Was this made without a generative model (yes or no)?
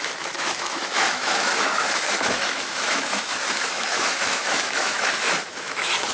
no